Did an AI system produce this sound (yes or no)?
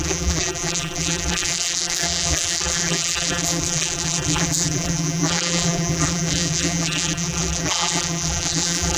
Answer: yes